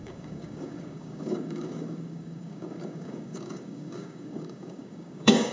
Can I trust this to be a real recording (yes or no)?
no